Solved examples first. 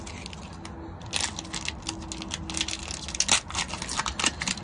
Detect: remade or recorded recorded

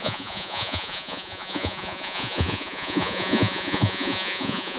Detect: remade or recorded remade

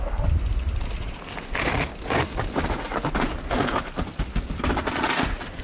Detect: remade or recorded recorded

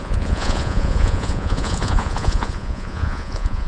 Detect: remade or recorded remade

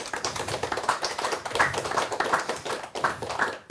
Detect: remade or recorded remade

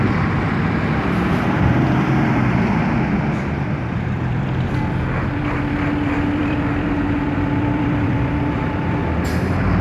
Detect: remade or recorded remade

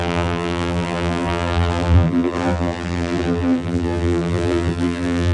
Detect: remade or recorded remade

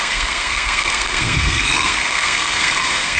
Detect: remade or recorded remade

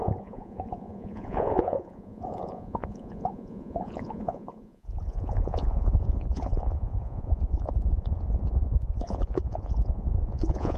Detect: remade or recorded remade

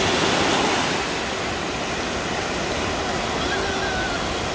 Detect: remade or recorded recorded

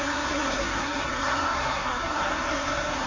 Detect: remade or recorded remade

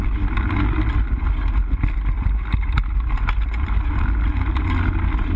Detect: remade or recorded recorded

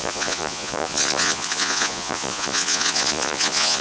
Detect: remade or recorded remade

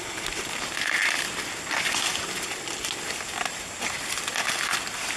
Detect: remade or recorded recorded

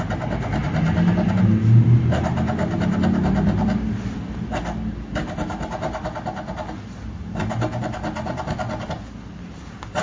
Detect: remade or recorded recorded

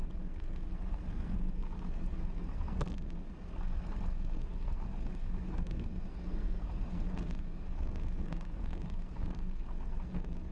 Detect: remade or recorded remade